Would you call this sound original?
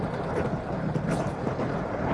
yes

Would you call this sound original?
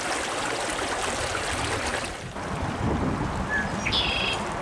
yes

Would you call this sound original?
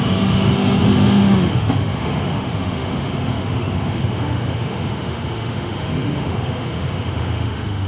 no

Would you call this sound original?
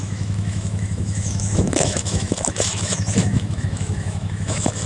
no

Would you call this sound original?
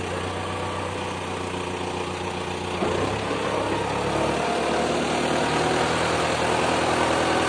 yes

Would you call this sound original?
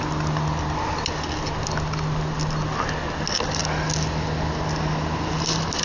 yes